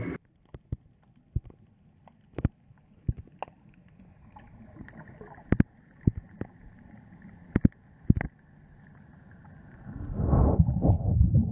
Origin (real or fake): real